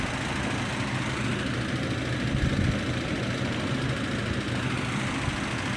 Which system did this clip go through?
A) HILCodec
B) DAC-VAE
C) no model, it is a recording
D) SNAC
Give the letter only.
C